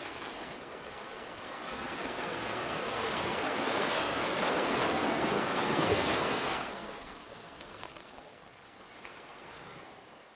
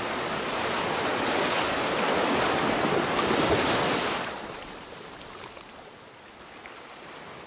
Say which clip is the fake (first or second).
first